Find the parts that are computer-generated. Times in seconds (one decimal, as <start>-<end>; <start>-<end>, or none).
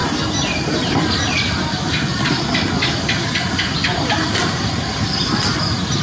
none